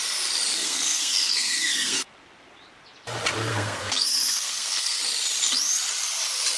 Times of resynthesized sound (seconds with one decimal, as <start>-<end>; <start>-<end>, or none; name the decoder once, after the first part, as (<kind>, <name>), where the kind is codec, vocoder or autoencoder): 0.5-2.1 (codec, SNAC); 3.5-5.0